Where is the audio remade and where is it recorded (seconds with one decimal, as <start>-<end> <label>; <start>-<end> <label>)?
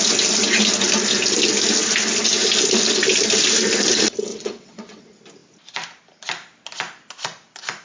0.0-4.3 recorded; 4.3-5.0 remade; 5.0-7.8 recorded